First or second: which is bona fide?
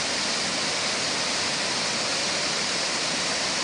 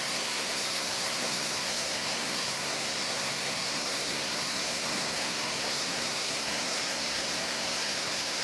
first